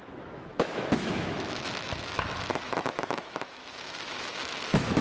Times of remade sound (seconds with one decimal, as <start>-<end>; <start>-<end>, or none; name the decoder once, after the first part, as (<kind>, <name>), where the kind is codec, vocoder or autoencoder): 0.0-5.0 (autoencoder, DAC-VAE)